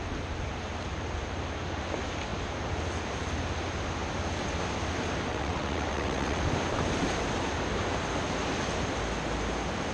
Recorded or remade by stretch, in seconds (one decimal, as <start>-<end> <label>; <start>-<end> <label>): 0.0-5.3 recorded; 5.3-6.4 remade; 6.4-9.9 recorded